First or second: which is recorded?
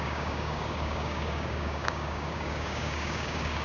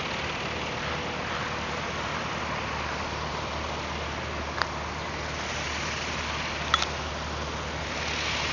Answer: second